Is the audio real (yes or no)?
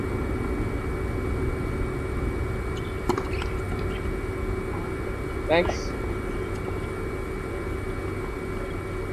yes